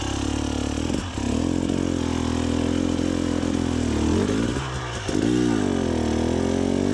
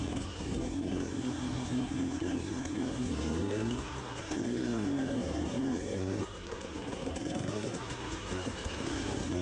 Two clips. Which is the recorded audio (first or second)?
first